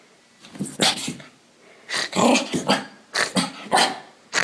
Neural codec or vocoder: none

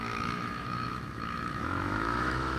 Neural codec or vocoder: autoencoder, DAC-VAE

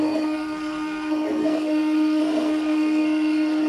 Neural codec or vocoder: codec, SNAC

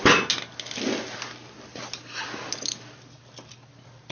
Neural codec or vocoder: none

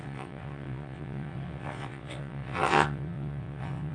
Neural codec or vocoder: vocoder, WaveNeXt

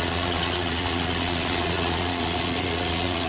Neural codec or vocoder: vocoder, Vocos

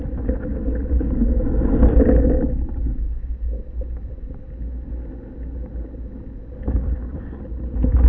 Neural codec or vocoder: none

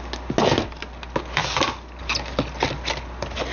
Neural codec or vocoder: none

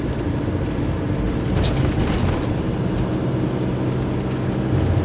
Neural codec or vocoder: none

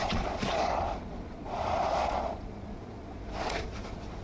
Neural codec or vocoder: vocoder, Vocos